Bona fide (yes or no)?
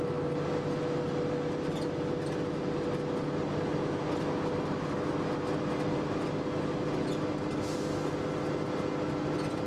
yes